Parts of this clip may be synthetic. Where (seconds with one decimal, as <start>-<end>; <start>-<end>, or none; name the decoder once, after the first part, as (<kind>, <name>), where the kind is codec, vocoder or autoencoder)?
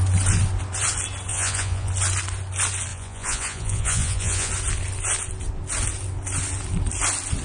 1.3-1.9 (vocoder, Vocos); 2.9-4.5